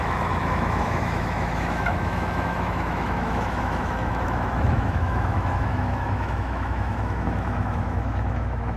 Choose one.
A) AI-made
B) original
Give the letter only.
A